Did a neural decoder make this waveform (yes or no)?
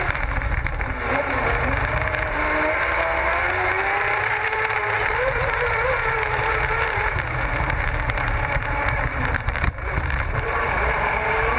yes